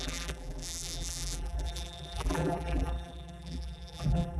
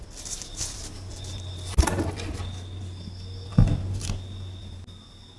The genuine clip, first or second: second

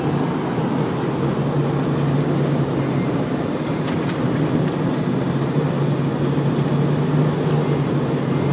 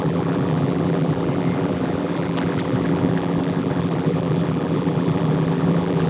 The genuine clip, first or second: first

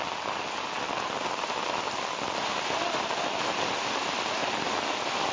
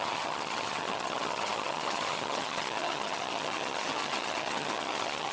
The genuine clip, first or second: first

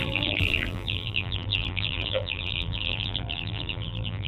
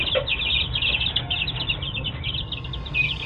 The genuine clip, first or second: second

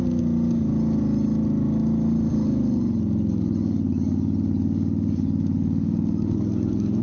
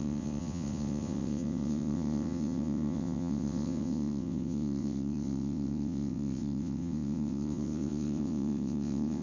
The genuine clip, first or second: first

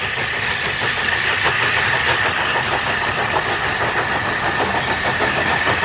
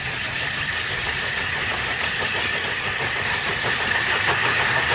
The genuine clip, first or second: first